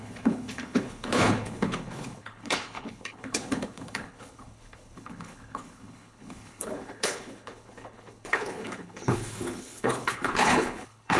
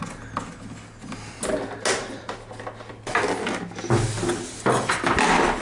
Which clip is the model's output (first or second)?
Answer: first